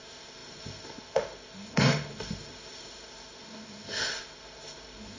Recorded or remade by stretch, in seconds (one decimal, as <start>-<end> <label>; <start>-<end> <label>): 0.0-5.2 remade

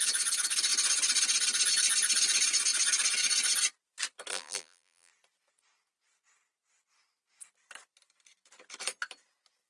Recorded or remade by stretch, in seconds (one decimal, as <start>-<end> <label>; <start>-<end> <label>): 0.0-4.3 recorded; 4.3-5.1 remade; 5.1-9.7 recorded

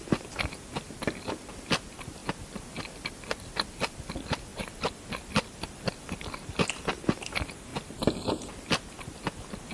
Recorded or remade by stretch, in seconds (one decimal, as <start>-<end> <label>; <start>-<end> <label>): 0.0-9.7 recorded

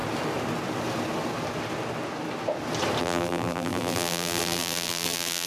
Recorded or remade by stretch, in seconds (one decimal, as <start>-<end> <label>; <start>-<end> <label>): 0.0-3.0 recorded; 3.0-5.5 remade

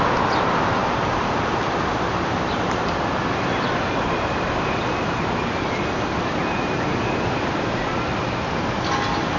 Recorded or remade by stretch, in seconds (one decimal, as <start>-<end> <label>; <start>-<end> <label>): 0.0-0.8 recorded; 0.8-2.9 remade; 2.9-9.4 recorded

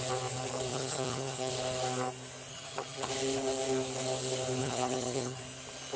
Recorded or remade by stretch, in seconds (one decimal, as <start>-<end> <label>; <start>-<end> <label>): 0.0-0.7 recorded; 0.7-1.5 remade; 1.5-2.5 recorded; 2.5-3.1 remade; 3.1-4.6 recorded; 4.6-5.4 remade; 5.4-6.0 recorded

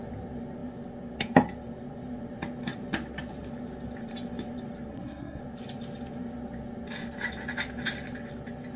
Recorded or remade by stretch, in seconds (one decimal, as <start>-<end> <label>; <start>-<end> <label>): 0.0-4.9 recorded; 4.9-5.4 remade; 5.4-8.8 recorded

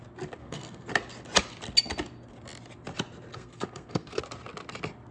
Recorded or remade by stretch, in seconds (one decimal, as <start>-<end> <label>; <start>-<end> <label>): 0.0-0.4 recorded; 0.4-0.9 remade; 0.9-3.3 recorded; 3.3-4.2 remade; 4.2-5.1 recorded